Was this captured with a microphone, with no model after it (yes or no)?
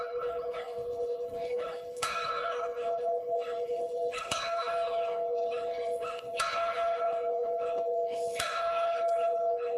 no